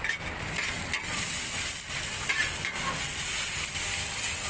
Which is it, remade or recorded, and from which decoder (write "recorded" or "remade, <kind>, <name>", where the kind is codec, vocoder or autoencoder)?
recorded